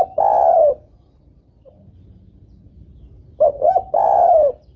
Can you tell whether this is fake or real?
real